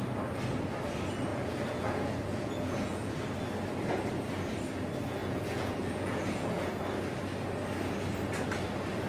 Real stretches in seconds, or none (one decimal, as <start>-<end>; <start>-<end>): 0.0-1.3; 3.1-5.2; 6.7-9.1